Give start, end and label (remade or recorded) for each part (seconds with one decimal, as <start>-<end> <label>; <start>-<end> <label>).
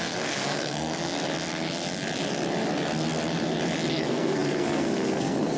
0.0-1.0 remade; 1.0-3.9 recorded; 3.9-5.6 remade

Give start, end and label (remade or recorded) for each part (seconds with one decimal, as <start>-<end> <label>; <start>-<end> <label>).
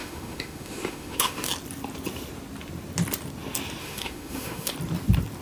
0.0-1.5 remade; 1.5-3.8 recorded; 3.8-4.7 remade; 4.7-5.4 recorded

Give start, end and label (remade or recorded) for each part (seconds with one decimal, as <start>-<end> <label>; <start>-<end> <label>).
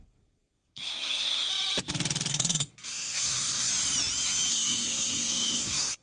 0.0-1.5 remade; 1.5-2.3 recorded; 2.3-3.7 remade; 3.7-4.5 recorded; 4.5-6.0 remade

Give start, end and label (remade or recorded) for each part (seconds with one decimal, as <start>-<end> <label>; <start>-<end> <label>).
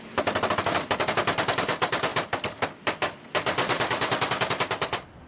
0.0-2.1 remade; 2.1-5.3 recorded